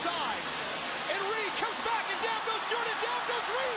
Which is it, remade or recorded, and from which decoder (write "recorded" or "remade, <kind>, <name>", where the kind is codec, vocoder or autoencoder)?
recorded